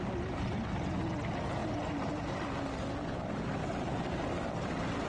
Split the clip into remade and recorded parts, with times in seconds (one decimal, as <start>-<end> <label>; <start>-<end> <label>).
0.0-5.1 recorded